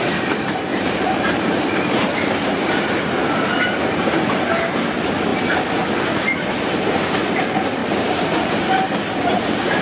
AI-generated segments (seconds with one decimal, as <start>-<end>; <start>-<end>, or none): 0.7-4.5; 7.8-8.5